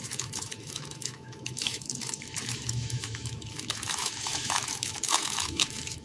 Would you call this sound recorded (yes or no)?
no